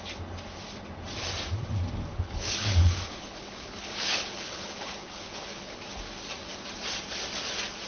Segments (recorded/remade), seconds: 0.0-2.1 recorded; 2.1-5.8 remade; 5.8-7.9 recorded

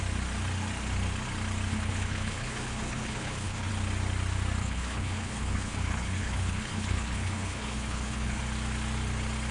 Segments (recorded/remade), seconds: 0.0-1.7 recorded; 1.7-3.7 remade; 3.7-4.6 recorded; 4.6-8.4 remade; 8.4-9.5 recorded

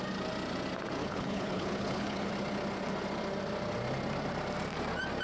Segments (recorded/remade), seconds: 0.0-1.0 recorded; 1.0-2.3 remade; 2.3-5.2 recorded

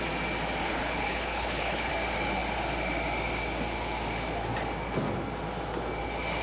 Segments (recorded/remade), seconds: 0.0-0.6 recorded; 0.6-1.9 remade; 1.9-6.4 recorded